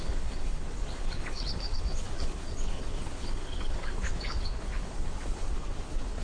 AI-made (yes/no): yes